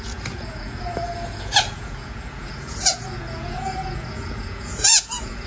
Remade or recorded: remade